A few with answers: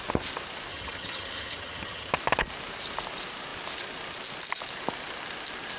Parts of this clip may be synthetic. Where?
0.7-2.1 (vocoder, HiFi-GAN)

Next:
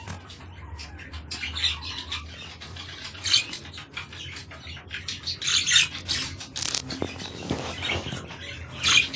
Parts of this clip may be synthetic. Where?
none

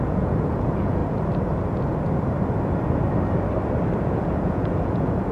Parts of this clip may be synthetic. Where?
0.0-1.0 (vocoder, Vocos); 4.0-5.3

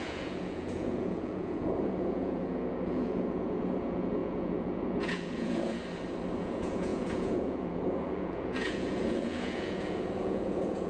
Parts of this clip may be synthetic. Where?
0.0-5.8 (vocoder, Vocos); 6.4-10.9

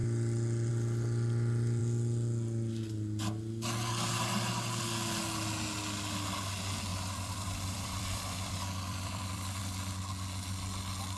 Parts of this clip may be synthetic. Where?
6.9-9.6 (vocoder, BigVGAN v2)

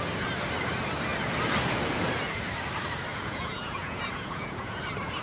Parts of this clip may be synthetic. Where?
3.1-4.8 (vocoder, Vocos)